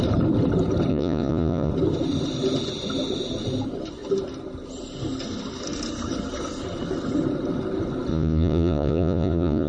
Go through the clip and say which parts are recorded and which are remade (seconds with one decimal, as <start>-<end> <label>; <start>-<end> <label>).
0.0-0.9 recorded; 0.9-1.7 remade; 1.7-8.1 recorded; 8.1-9.7 remade